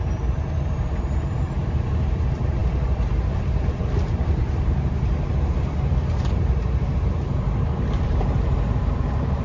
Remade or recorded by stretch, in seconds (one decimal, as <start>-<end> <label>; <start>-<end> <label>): 0.0-9.4 remade